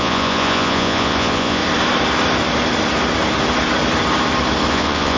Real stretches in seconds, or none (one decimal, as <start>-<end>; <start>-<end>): 1.6-4.7